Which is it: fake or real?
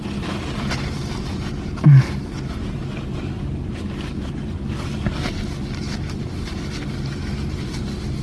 real